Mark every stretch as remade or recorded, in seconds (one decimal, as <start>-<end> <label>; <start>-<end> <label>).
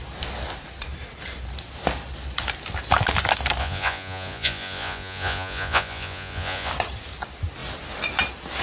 0.0-3.6 recorded; 3.6-6.7 remade; 6.7-8.6 recorded